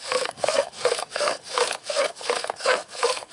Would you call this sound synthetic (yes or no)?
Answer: yes